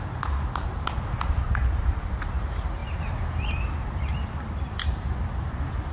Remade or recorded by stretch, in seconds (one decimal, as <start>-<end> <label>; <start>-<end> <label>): 0.0-5.9 recorded